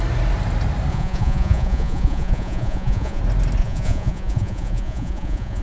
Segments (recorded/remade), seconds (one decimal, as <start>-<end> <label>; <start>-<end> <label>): 0.0-0.9 recorded; 0.9-3.2 remade; 3.2-3.6 recorded; 3.6-5.6 remade